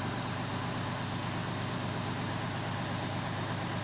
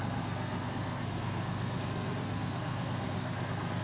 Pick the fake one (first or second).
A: second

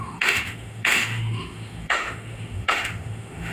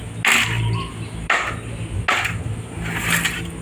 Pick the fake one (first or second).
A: first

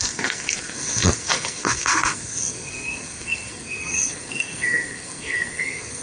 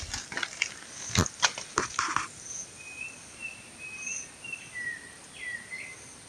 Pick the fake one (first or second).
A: first